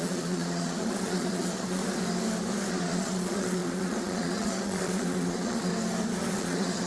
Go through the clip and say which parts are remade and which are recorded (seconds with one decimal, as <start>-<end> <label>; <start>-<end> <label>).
0.0-1.8 remade; 1.8-2.7 recorded; 2.7-5.7 remade; 5.7-6.3 recorded; 6.3-6.9 remade